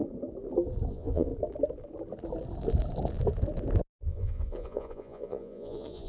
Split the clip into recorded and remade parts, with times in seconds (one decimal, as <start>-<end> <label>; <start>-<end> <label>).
0.0-0.9 recorded; 0.9-1.3 remade; 1.3-4.0 recorded; 4.0-6.1 remade